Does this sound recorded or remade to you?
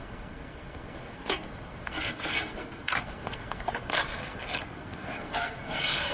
remade